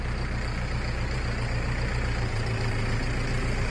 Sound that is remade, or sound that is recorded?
remade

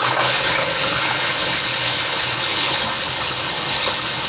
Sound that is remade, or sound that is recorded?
remade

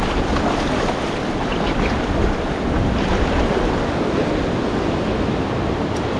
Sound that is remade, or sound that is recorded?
recorded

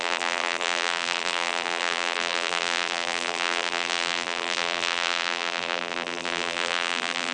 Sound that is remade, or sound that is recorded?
remade